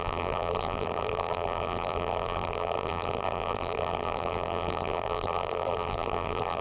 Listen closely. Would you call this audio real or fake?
fake